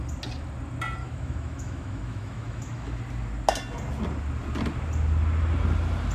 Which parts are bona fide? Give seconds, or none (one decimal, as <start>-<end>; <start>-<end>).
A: 0.0-1.0; 3.0-6.1